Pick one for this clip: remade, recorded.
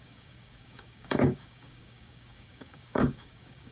remade